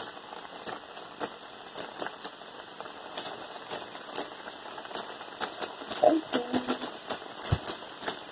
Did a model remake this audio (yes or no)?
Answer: no